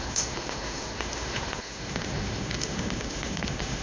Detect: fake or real fake